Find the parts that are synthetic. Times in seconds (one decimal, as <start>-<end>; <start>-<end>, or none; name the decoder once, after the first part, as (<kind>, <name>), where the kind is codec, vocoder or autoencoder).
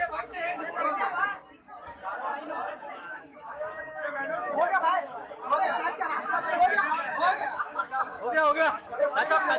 0.0-0.8 (autoencoder, DAC-VAE); 2.9-5.2; 6.9-9.6